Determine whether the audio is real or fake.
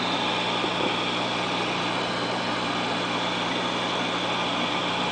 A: real